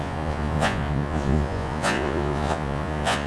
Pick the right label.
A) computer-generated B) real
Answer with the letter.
A